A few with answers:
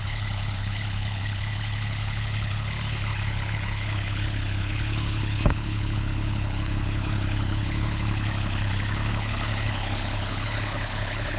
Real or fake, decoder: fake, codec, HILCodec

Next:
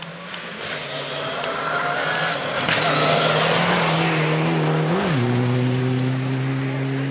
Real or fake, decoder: real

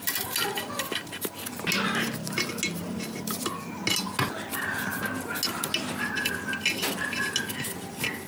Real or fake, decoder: real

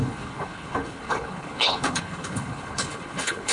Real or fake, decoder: fake, codec, HILCodec